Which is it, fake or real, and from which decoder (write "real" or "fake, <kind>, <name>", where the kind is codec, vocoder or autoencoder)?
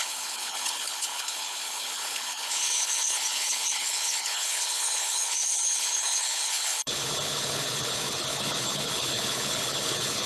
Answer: fake, codec, HILCodec